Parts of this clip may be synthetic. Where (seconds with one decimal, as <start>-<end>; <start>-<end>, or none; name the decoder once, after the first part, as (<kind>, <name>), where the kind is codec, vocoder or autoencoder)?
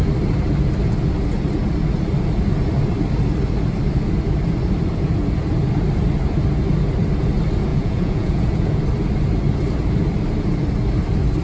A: 7.7-8.8 (vocoder, Vocos)